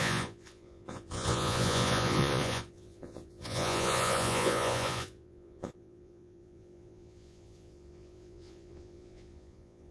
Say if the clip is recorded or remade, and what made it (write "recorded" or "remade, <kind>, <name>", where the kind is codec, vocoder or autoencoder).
remade, vocoder, Vocos